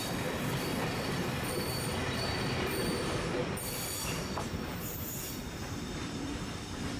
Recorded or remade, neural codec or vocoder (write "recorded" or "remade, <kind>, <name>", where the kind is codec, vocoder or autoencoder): remade, vocoder, BigVGAN v2